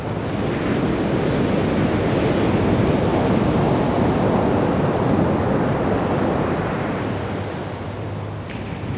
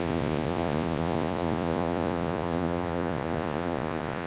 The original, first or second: first